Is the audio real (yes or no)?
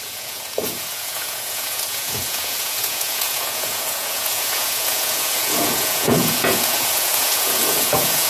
no